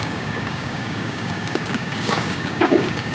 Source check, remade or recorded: remade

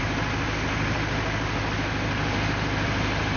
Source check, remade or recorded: recorded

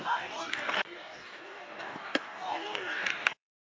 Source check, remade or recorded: remade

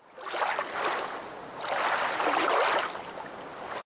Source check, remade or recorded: recorded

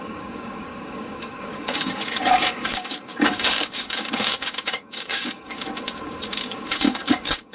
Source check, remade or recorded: remade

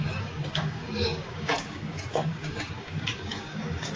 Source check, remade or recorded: remade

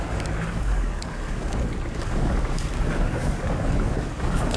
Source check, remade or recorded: remade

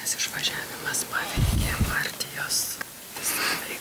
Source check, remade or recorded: recorded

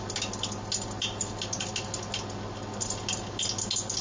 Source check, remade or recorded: recorded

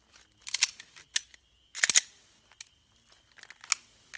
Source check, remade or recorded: recorded